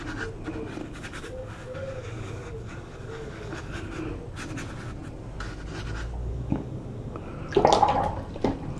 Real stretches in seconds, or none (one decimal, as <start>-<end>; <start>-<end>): 0.0-0.8; 3.9-6.2; 7.3-8.8